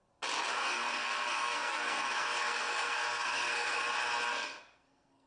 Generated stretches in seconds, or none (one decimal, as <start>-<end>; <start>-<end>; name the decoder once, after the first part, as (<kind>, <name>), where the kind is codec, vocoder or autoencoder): 0.6-3.8 (codec, SNAC); 4.3-5.3